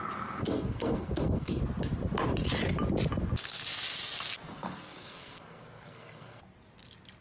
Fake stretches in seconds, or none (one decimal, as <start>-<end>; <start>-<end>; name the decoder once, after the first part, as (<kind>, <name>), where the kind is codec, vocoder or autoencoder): 0.4-1.6 (codec, SNAC); 4.5-6.4

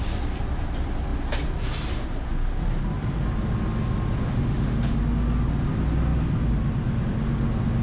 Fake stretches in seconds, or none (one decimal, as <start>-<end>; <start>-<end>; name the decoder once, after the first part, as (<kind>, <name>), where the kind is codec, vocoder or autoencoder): 4.2-5.0 (autoencoder, DAC-VAE)

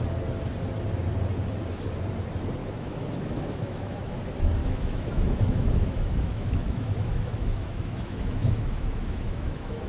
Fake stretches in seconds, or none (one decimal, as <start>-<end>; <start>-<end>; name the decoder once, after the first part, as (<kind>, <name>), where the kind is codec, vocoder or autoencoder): 2.6-4.1 (autoencoder, DAC-VAE); 4.6-9.9

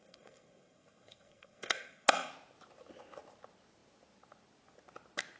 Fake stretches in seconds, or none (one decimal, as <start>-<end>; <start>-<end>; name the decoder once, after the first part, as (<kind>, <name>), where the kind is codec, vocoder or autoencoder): 0.0-2.3 (codec, SNAC)

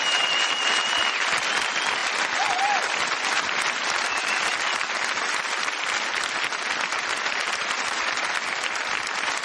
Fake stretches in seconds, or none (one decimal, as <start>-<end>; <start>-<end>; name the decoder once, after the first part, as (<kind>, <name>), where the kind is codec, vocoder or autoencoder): none

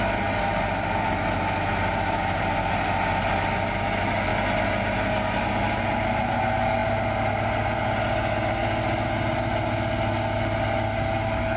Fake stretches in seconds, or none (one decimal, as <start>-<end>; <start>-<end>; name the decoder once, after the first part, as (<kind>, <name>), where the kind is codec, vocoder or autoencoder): none

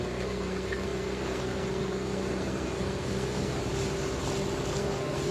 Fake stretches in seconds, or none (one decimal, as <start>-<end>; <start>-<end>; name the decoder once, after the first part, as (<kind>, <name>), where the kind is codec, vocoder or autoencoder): 0.0-3.6 (codec, SNAC); 4.7-5.3